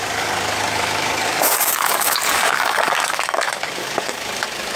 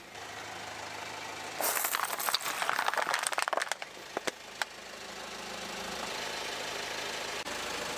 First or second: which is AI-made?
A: first